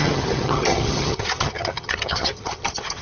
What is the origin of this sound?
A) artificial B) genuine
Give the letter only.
A